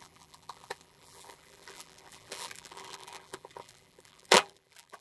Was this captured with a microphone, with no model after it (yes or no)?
no